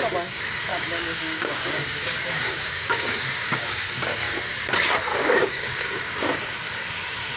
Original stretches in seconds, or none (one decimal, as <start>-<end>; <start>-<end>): 0.0-0.7; 4.4-5.1; 6.6-7.4